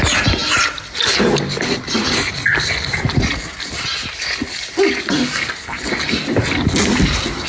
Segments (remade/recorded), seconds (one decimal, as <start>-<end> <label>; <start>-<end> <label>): 0.0-7.5 recorded